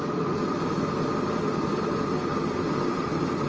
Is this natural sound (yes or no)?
yes